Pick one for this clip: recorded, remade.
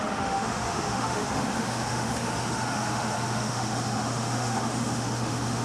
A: remade